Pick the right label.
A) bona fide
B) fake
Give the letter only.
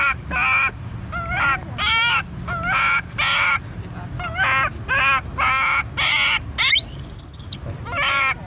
A